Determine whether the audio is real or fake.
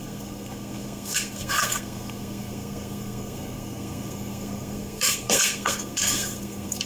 fake